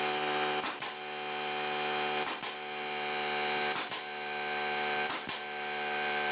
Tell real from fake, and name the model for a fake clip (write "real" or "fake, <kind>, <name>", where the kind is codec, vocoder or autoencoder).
fake, vocoder, BigVGAN v2